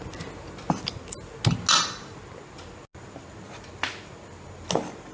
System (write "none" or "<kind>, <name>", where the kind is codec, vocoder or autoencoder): none